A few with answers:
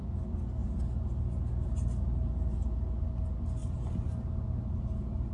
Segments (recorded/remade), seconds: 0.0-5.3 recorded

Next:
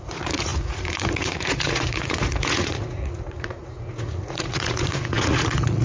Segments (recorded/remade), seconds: 0.0-5.8 remade